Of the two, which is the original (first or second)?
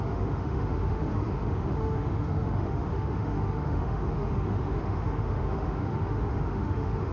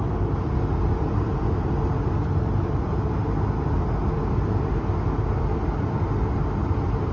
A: second